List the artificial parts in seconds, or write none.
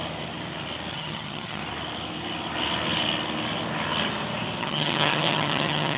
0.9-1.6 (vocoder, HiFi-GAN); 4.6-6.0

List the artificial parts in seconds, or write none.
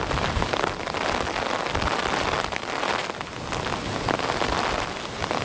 none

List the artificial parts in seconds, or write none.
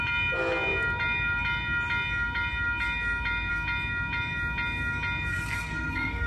5.3-6.3 (codec, SNAC)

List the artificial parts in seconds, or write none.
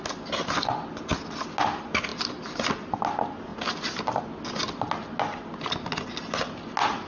2.1-2.9 (vocoder, BigVGAN v2); 3.5-4.2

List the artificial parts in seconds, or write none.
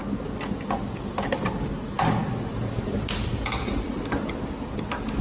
none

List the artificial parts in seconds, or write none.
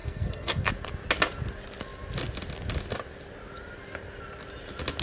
0.0-0.7 (codec, SNAC)